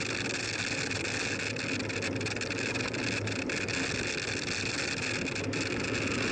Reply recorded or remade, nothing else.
recorded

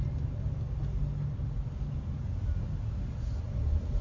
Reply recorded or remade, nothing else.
recorded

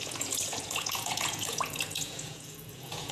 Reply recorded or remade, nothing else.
remade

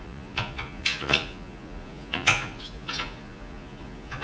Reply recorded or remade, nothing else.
remade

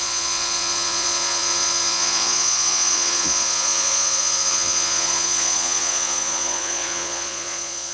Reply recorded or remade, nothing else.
remade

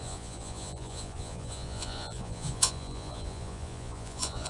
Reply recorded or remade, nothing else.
remade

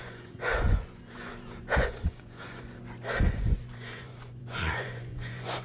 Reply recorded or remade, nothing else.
remade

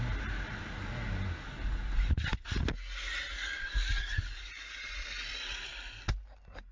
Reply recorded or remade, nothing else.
recorded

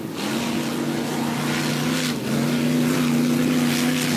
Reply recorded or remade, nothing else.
recorded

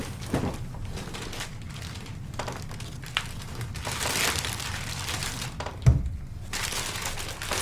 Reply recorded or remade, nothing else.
recorded